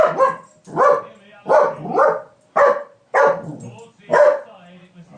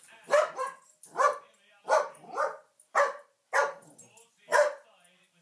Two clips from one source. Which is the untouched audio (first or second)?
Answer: first